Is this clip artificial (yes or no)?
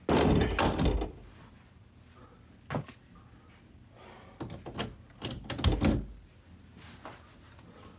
no